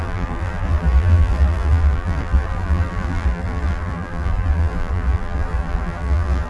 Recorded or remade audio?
remade